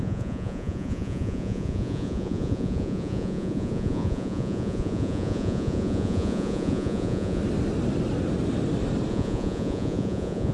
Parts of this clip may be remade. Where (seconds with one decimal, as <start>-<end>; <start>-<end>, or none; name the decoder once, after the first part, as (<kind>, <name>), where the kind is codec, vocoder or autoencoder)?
0.0-7.4 (vocoder, Vocos); 9.1-10.5